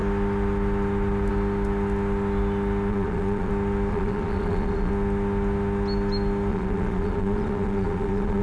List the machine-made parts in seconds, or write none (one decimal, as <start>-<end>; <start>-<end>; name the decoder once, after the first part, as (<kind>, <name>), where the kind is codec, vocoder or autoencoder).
2.9-3.5 (vocoder, Vocos); 3.9-4.9; 6.5-8.4